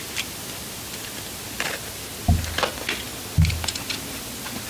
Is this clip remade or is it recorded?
recorded